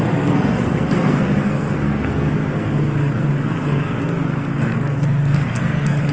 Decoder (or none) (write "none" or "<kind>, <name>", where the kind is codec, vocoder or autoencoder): codec, SNAC